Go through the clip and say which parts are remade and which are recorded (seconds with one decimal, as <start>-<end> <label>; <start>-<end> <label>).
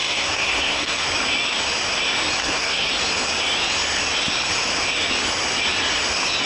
0.0-1.1 remade; 1.1-2.4 recorded; 2.4-2.9 remade; 2.9-6.5 recorded